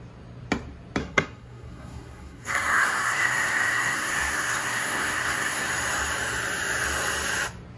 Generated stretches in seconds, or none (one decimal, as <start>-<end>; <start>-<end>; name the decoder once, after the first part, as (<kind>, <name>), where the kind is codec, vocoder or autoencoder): 1.0-5.7 (codec, SNAC)